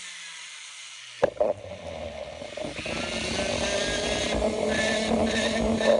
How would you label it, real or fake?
real